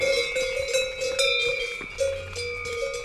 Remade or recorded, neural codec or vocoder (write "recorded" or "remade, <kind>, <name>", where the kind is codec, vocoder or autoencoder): recorded